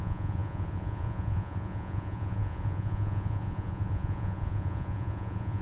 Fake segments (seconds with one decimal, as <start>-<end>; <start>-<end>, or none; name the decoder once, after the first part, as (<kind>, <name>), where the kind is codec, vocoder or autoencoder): 0.0-5.6 (vocoder, Vocos)